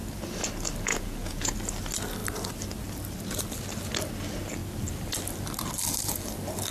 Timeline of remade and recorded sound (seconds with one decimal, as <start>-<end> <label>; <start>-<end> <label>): 0.0-0.9 recorded; 0.9-1.5 remade; 1.5-6.7 recorded